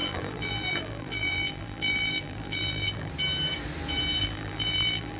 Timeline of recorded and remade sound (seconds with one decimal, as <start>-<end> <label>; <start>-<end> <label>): 0.0-3.1 remade; 3.1-4.2 recorded; 4.2-5.2 remade

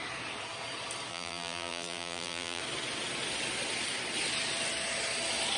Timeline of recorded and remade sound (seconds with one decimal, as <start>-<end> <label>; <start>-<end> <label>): 0.0-1.1 recorded; 1.1-2.6 remade; 2.6-5.6 recorded

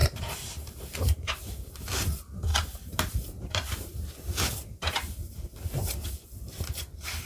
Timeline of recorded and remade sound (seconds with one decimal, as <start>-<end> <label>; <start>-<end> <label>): 0.0-1.7 remade; 1.7-2.5 recorded; 2.5-6.1 remade; 6.1-7.3 recorded

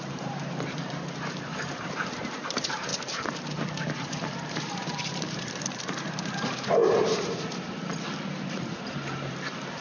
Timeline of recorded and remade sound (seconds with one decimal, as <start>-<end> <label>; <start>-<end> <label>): 0.0-2.9 remade; 2.9-3.8 recorded; 3.8-7.9 remade; 7.9-8.5 recorded; 8.5-9.8 remade

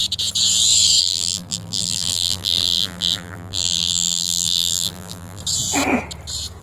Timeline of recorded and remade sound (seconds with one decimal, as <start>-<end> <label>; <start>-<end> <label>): 0.0-1.0 recorded; 1.0-5.4 remade; 5.4-6.6 recorded

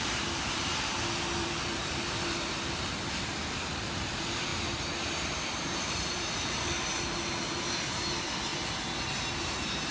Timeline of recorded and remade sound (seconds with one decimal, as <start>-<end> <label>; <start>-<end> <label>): 0.0-0.9 remade; 0.9-1.4 recorded; 1.4-4.5 remade; 4.5-5.9 recorded; 5.9-8.5 remade; 8.5-9.4 recorded; 9.4-9.9 remade

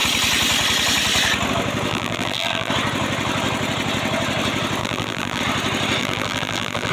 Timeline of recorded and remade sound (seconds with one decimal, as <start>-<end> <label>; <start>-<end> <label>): 0.0-1.9 recorded; 1.9-2.7 remade; 2.7-4.8 recorded; 4.8-5.4 remade; 5.4-6.0 recorded; 6.0-6.9 remade